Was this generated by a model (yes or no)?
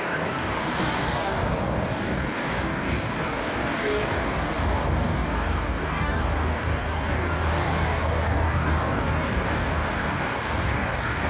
yes